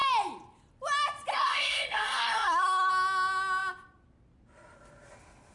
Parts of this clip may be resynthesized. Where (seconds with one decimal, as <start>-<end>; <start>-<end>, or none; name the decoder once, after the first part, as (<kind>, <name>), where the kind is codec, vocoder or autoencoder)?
1.3-2.9 (codec, SNAC)